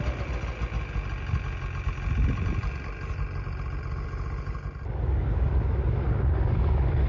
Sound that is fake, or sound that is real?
real